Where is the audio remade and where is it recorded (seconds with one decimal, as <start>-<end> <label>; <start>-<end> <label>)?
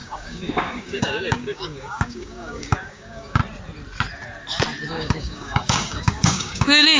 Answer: 0.0-3.4 remade; 3.4-4.9 recorded; 4.9-7.0 remade